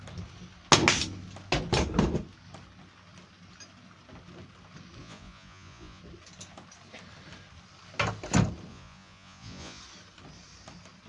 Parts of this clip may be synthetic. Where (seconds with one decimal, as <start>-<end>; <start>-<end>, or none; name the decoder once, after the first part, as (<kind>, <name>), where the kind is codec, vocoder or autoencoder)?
5.0-6.0 (vocoder, Vocos); 8.7-9.8